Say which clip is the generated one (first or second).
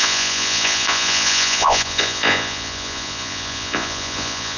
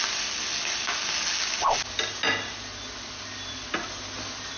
first